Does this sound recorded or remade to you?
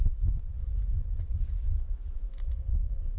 remade